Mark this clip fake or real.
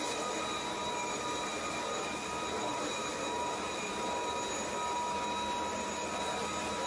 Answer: real